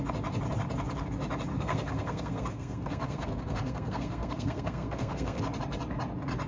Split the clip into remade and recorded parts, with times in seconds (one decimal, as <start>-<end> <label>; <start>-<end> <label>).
0.0-1.5 recorded; 1.5-5.4 remade; 5.4-6.5 recorded